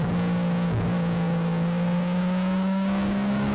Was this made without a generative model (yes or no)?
no